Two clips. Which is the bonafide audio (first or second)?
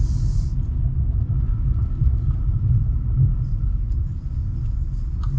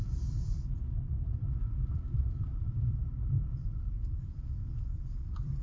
first